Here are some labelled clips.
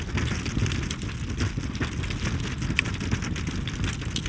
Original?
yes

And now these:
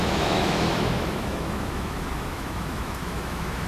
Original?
no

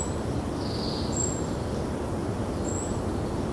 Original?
yes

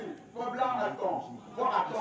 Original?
yes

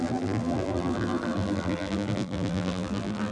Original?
no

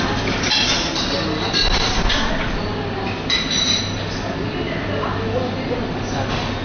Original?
yes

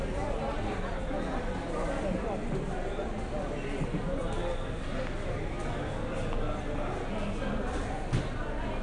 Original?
yes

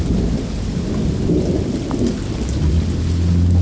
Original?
yes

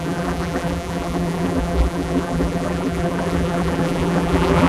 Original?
no